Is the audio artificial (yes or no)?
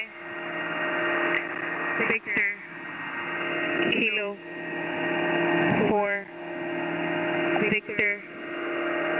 no